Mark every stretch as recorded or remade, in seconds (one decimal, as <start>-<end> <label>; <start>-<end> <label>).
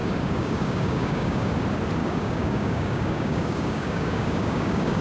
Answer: 0.0-1.5 remade; 1.5-2.0 recorded; 2.0-5.0 remade